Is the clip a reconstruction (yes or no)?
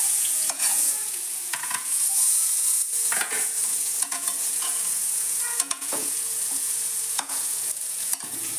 yes